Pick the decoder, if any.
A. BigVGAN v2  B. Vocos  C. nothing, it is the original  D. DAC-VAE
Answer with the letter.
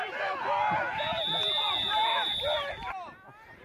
C